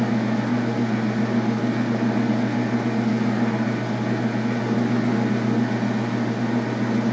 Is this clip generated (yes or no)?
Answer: no